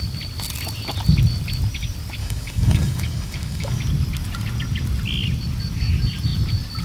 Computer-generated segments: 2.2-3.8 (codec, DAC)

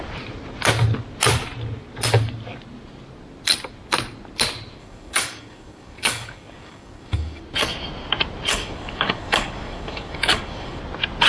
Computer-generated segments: 4.8-7.4 (codec, DAC); 8.5-10.8

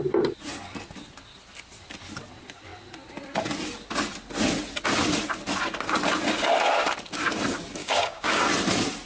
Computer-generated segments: 7.8-8.4 (codec, DAC)

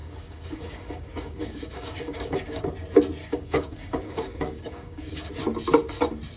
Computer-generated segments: 0.0-2.6 (codec, DAC); 3.2-5.3

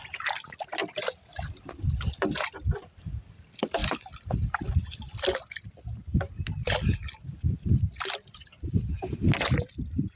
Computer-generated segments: none

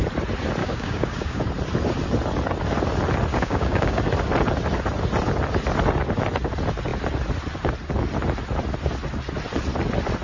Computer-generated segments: 0.6-1.4 (codec, DAC); 3.3-4.0

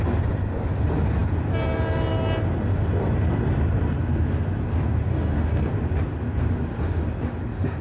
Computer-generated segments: 5.1-5.7 (codec, DAC)